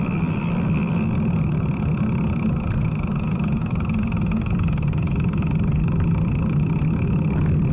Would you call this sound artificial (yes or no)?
no